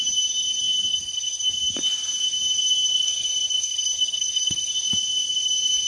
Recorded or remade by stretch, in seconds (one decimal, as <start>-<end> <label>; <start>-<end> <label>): 0.0-0.9 recorded; 0.9-1.5 remade; 1.5-2.9 recorded; 2.9-4.7 remade; 4.7-5.9 recorded